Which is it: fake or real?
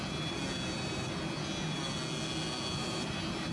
real